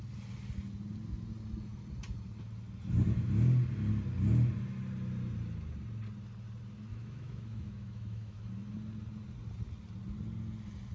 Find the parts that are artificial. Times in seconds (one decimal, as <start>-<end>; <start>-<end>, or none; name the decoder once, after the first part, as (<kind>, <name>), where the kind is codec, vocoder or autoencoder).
6.9-8.5 (autoencoder, DAC-VAE)